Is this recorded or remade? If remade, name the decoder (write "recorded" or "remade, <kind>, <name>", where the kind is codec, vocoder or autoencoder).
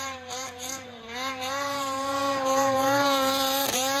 remade, vocoder, BigVGAN v2